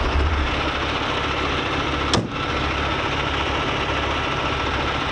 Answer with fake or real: real